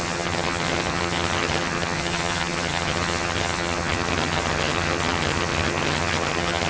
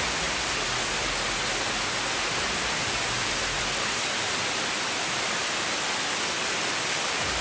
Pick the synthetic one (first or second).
first